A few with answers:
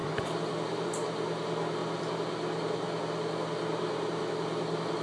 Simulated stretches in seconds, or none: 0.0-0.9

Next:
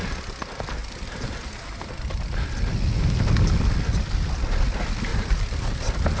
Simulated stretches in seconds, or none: 0.8-3.2; 5.1-6.2

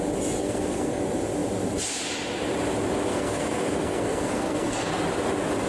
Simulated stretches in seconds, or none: 0.4-1.0; 3.1-4.9

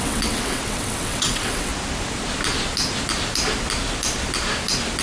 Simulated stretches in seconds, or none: 0.0-1.7

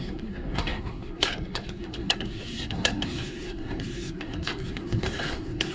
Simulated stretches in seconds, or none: 0.0-5.7

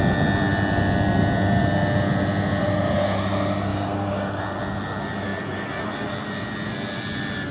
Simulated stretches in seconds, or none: 3.7-4.4

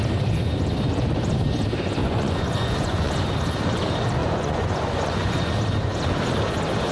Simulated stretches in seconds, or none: 2.0-3.2; 4.2-5.5

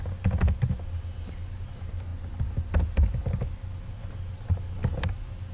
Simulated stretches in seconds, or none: none